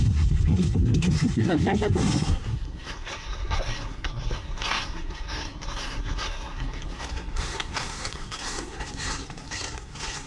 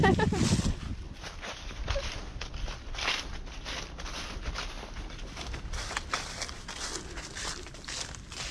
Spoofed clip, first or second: first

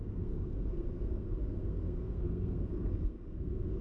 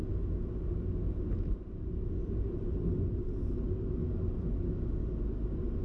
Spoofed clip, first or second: first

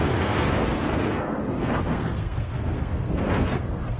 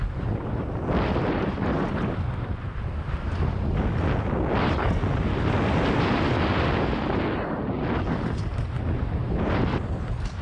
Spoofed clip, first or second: first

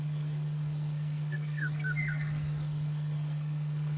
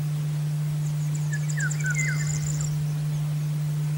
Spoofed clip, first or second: first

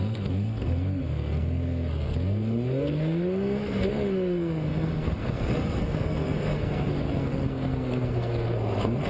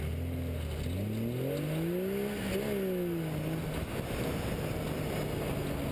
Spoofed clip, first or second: first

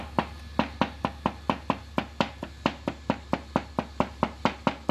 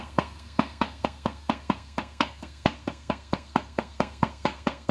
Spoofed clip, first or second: second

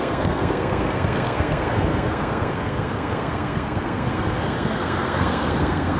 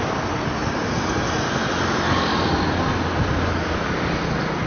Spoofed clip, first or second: first